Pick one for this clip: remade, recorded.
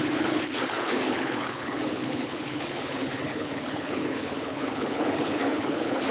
remade